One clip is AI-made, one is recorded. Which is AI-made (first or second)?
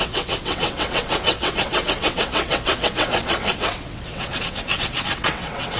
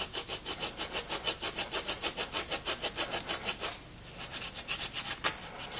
first